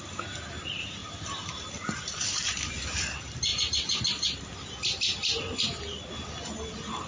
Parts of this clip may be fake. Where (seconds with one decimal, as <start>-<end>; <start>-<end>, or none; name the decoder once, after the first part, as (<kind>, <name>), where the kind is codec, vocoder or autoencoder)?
1.0-2.7 (vocoder, BigVGAN v2)